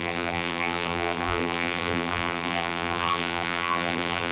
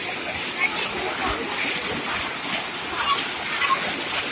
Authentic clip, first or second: second